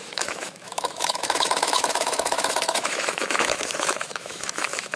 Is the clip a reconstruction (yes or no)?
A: yes